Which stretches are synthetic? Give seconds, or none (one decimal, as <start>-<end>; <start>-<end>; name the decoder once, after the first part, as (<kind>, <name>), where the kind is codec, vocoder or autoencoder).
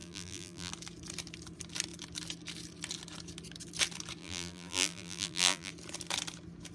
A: 0.0-0.7 (vocoder, BigVGAN v2); 4.2-5.7